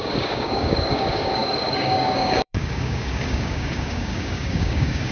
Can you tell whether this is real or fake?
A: fake